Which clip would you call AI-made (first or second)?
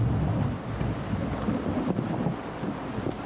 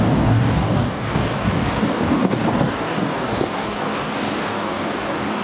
second